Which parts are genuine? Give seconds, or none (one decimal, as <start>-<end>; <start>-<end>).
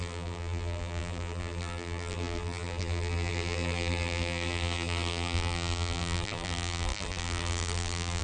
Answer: none